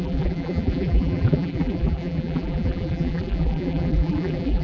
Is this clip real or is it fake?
fake